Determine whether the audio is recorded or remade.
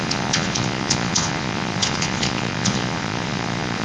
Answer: remade